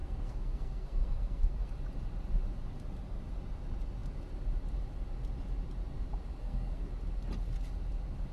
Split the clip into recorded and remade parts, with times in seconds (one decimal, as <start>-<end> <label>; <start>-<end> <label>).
0.0-1.7 remade; 1.7-6.4 recorded; 6.4-6.9 remade; 6.9-8.3 recorded